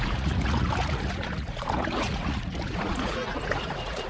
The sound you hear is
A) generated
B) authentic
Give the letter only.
A